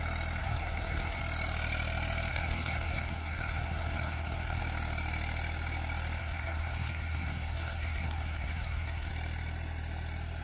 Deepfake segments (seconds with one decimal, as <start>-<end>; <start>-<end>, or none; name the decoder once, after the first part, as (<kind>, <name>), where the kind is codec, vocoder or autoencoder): 0.4-1.2 (codec, SNAC); 2.3-4.6; 6.2-9.1